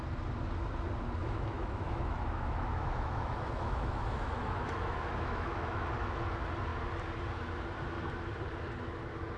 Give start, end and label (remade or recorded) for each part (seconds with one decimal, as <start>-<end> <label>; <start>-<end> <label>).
0.0-1.2 recorded; 1.2-5.9 remade; 5.9-9.4 recorded